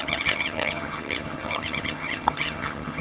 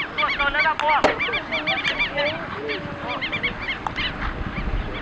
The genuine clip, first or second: second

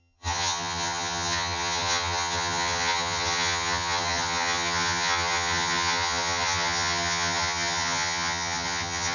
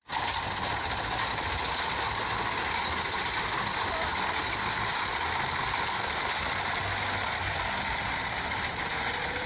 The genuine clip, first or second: second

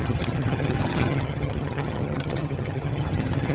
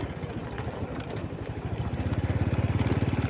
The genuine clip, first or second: second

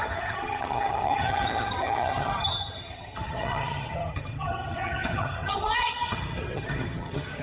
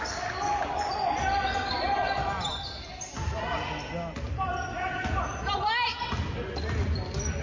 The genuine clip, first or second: second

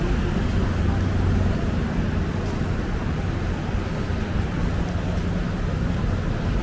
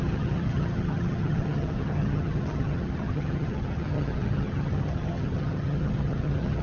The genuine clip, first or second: first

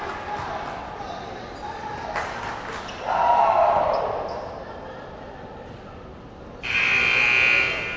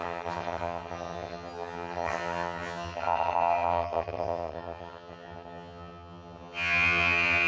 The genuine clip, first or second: first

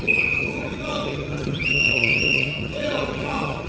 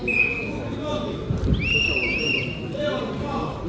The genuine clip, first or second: second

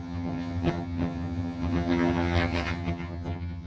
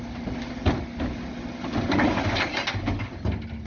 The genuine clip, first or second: second